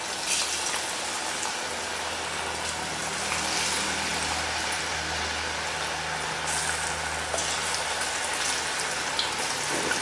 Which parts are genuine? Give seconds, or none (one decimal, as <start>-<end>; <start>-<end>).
0.0-10.0